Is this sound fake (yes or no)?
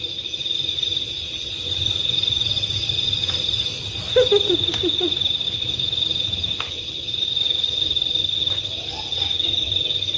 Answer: no